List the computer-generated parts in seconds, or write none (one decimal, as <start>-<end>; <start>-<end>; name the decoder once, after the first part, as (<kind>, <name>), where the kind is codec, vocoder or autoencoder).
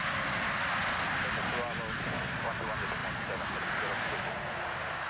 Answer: none